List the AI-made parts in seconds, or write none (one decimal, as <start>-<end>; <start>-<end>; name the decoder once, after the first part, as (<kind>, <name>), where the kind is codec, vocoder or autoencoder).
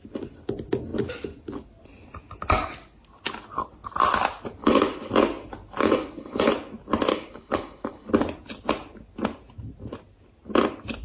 4.6-5.1 (codec, HILCodec); 5.8-6.5; 7.1-8.1